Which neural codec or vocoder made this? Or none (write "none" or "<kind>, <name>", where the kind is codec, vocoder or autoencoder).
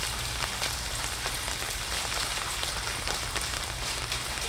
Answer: none